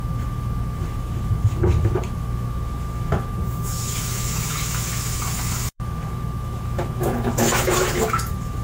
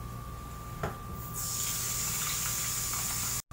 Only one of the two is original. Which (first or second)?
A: second